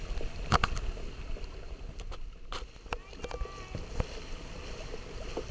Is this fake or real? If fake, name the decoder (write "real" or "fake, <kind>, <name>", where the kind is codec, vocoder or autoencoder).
real